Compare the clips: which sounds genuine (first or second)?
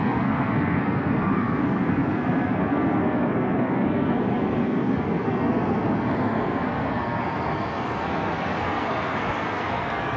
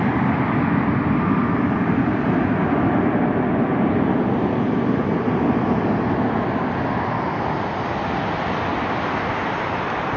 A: second